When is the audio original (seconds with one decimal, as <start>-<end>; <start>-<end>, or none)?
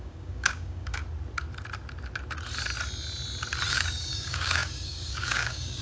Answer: 1.0-3.7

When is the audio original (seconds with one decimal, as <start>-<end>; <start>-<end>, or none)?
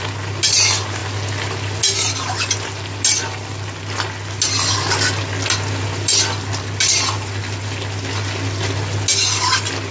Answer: 0.0-9.9